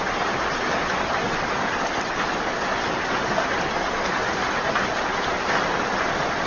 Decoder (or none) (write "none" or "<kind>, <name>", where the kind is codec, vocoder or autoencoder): none